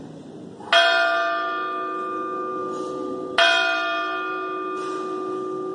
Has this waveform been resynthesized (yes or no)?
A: no